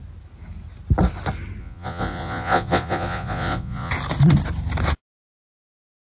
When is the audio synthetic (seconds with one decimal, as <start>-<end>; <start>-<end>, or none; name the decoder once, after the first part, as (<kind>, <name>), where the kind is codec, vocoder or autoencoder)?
1.6-3.9 (vocoder, Vocos)